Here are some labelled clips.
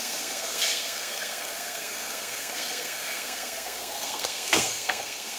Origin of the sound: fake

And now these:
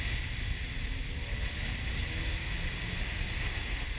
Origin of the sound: real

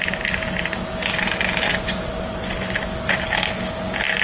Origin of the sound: real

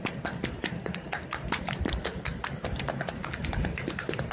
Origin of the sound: fake